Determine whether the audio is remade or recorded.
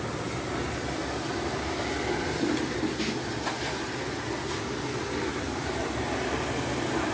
recorded